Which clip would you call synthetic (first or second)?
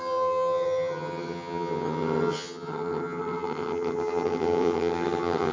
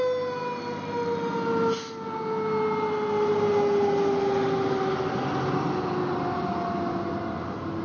first